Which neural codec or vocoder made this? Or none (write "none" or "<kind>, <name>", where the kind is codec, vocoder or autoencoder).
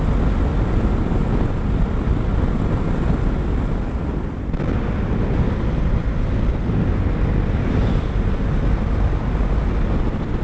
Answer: none